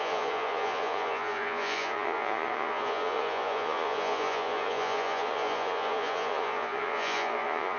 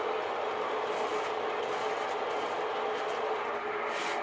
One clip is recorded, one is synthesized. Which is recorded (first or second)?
second